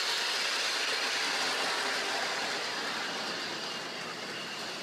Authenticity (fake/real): real